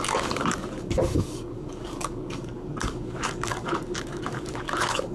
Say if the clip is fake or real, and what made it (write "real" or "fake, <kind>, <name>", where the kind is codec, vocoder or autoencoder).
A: fake, codec, DAC